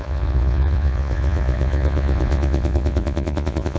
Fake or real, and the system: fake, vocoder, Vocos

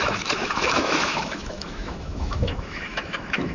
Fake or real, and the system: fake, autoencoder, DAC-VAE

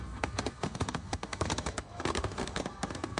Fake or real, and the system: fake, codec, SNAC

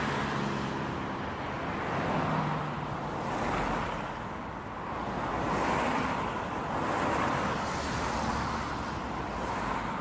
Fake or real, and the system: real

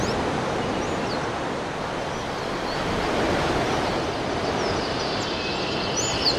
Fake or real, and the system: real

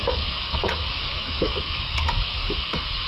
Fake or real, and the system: fake, codec, DAC